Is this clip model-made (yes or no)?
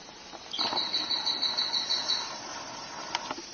no